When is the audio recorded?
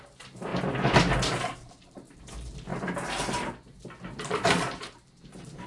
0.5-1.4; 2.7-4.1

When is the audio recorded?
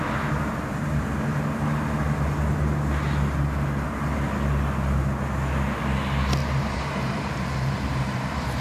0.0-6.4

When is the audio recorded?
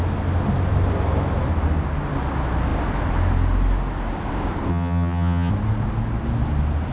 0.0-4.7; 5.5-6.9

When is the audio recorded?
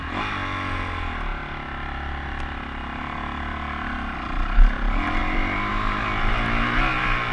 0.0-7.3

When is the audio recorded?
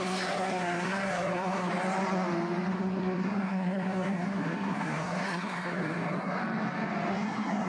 1.7-2.7; 6.4-7.1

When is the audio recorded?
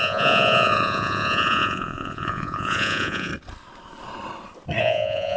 3.3-4.8